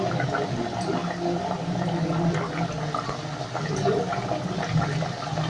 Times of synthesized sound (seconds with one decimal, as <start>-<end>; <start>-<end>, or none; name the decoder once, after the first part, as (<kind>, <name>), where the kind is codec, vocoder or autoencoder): none